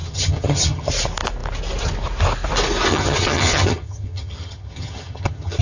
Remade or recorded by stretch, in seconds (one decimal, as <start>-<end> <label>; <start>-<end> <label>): 0.0-0.9 remade; 0.9-2.9 recorded; 2.9-5.6 remade